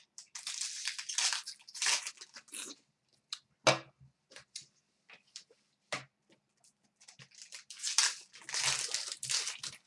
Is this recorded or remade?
recorded